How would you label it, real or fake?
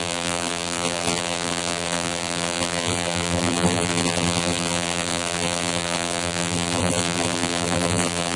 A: fake